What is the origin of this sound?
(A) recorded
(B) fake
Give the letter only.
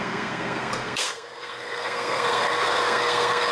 B